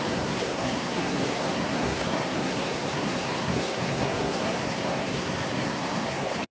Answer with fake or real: fake